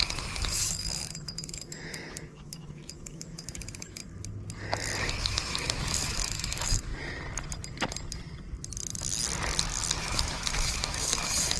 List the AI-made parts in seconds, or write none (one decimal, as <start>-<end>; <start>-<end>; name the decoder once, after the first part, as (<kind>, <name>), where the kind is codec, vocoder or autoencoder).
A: 0.0-4.0 (autoencoder, DAC-VAE); 5.2-6.9; 10.0-11.6